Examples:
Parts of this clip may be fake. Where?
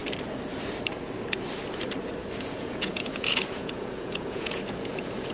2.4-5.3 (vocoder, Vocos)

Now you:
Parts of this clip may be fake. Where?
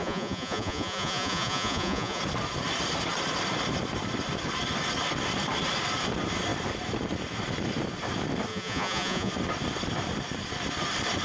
0.0-2.2 (vocoder, Vocos); 8.5-9.3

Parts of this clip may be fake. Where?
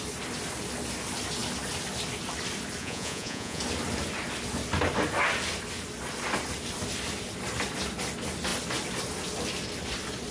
2.8-3.6 (vocoder, Vocos)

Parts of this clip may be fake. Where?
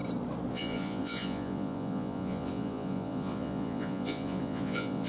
0.5-5.1 (vocoder, Vocos)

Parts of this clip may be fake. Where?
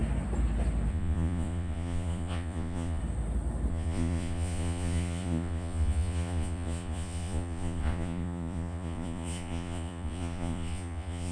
0.9-3.0 (vocoder, Vocos); 3.7-11.3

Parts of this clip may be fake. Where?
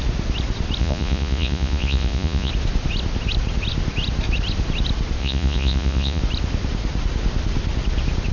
0.8-2.5 (vocoder, Vocos); 5.2-6.2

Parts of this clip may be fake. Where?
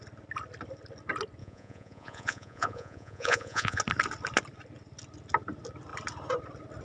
1.4-3.8 (vocoder, Vocos)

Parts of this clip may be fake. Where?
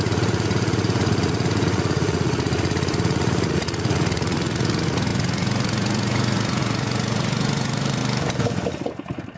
0.0-8.0 (vocoder, Vocos)